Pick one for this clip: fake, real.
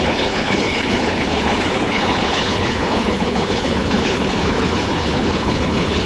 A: fake